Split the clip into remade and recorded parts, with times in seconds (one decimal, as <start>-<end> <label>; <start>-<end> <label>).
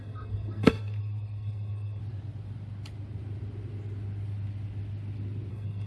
0.0-2.0 remade; 2.0-5.5 recorded; 5.5-5.9 remade